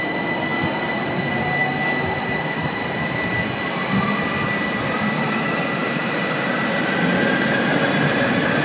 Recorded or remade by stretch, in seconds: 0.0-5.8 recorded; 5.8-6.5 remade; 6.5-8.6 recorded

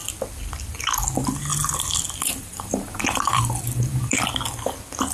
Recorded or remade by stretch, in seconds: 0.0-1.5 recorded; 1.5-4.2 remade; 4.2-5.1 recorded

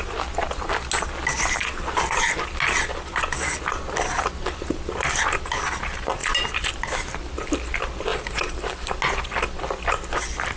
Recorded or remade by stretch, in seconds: 0.0-8.1 recorded; 8.1-8.9 remade; 8.9-10.6 recorded

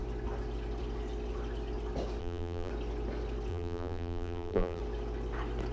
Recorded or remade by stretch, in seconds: 0.0-2.2 recorded; 2.2-2.7 remade; 2.7-3.5 recorded; 3.5-4.8 remade; 4.8-5.7 recorded

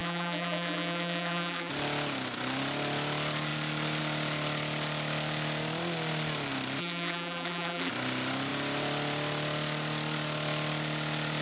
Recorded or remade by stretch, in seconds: 0.0-1.7 remade; 1.7-6.8 recorded; 6.8-7.9 remade; 7.9-11.4 recorded